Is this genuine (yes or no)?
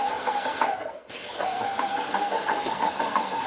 no